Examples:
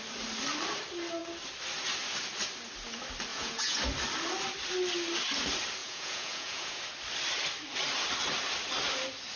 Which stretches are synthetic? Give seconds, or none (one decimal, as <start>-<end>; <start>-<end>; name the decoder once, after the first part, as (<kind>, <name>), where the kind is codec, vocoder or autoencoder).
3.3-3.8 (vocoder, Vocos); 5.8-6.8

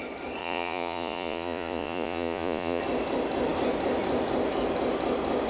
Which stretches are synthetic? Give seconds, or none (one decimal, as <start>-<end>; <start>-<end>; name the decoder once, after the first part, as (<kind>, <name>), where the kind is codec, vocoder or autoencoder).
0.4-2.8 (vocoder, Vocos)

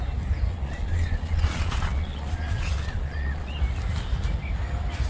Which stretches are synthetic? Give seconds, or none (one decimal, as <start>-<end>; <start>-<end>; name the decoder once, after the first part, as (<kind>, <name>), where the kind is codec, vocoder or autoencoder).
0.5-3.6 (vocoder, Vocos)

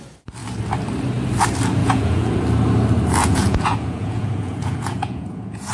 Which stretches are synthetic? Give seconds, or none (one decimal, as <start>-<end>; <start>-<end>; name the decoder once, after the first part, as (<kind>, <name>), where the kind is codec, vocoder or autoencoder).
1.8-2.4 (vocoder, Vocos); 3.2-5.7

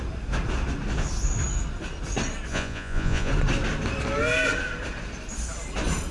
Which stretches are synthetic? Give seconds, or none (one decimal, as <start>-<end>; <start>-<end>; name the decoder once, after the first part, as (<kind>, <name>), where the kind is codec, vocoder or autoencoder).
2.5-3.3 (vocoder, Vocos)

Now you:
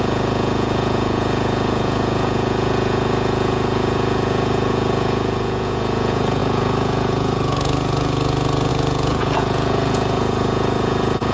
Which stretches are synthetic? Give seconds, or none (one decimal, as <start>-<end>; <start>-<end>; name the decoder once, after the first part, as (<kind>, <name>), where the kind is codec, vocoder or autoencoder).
0.0-11.3 (vocoder, Vocos)